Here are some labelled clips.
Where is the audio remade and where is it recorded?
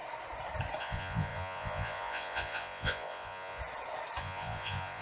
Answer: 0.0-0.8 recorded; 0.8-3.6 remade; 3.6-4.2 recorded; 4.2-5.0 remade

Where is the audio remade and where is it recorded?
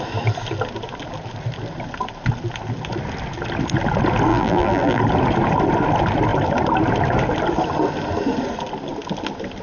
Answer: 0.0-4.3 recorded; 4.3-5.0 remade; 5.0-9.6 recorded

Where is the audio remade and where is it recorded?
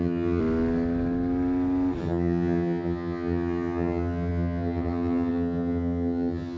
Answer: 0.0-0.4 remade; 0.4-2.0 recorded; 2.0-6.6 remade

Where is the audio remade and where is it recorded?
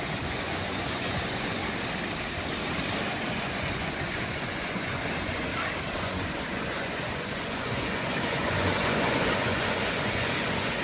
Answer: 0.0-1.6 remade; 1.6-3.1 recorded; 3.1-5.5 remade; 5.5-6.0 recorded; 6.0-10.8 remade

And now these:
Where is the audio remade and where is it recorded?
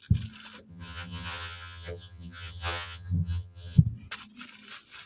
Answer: 0.0-0.7 recorded; 0.7-3.8 remade; 3.8-5.1 recorded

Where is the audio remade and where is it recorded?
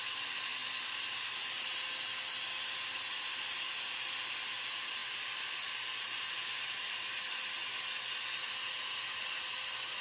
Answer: 0.0-10.0 recorded